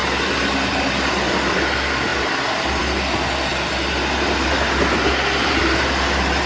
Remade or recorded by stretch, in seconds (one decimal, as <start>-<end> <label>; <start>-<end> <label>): 0.0-6.5 recorded